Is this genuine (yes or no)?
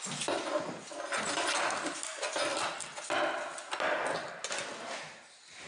yes